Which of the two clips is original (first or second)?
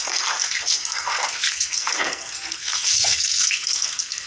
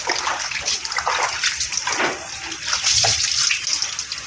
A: second